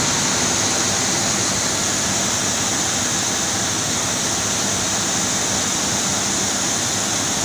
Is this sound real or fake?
real